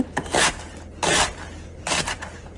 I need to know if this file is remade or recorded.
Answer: recorded